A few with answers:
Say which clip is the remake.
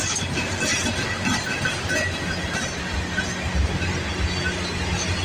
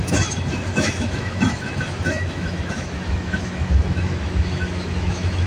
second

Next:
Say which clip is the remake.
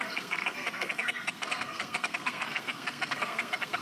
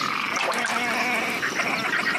first